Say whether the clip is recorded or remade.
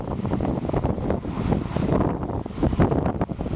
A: remade